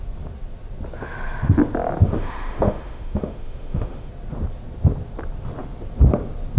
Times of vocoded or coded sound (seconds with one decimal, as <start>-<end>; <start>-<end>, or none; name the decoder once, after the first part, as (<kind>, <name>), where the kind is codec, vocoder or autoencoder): 2.0-4.1 (autoencoder, DAC-VAE)